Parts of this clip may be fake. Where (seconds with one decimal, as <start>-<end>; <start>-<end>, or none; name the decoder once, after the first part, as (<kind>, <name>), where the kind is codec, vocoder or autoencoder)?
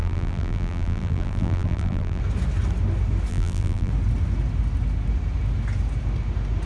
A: 0.0-2.2 (vocoder, BigVGAN v2); 3.3-3.9